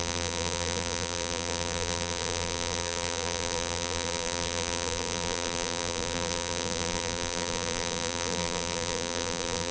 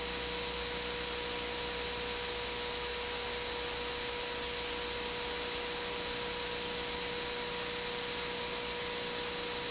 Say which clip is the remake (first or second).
first